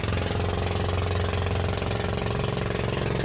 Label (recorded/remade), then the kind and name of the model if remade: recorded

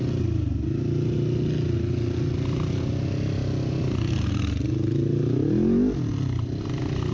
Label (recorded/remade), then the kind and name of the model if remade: recorded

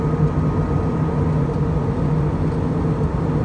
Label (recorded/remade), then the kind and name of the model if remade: recorded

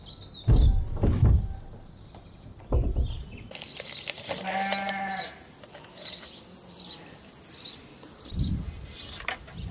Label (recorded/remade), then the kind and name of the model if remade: recorded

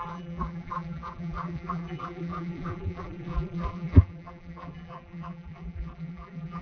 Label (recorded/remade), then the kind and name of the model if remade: remade, vocoder, BigVGAN v2